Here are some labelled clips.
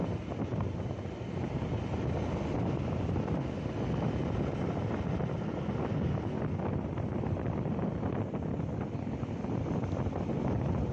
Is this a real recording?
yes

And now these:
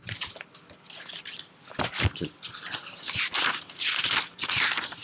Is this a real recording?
yes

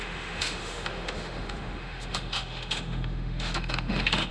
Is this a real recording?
no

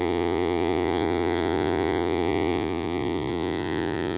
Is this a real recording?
no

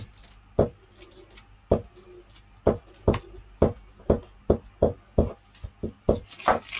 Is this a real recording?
yes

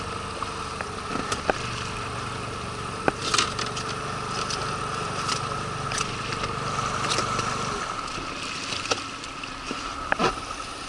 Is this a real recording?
yes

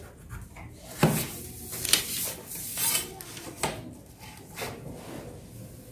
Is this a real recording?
yes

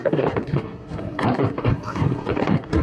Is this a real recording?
no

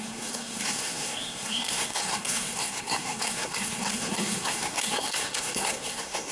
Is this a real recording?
no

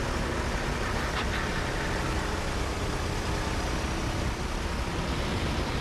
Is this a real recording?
yes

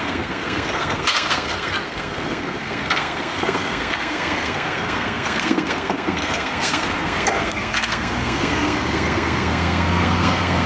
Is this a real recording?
no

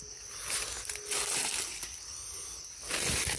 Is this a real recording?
yes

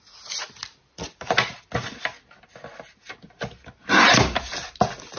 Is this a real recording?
yes